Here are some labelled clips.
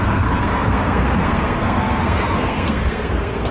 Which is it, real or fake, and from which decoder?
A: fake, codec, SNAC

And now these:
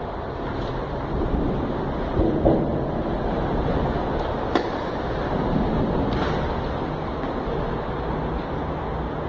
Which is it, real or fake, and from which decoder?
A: real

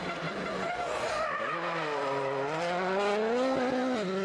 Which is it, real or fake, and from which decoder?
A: real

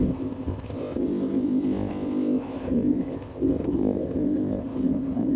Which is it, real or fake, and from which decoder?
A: fake, codec, ZipCodec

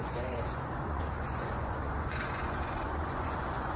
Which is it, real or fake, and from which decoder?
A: fake, vocoder, Vocos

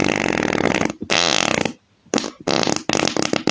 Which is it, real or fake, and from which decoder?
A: real